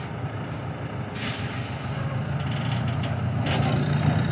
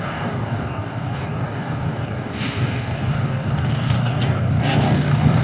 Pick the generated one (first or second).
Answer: second